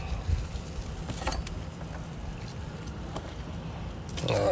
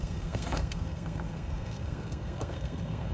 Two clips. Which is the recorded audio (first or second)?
first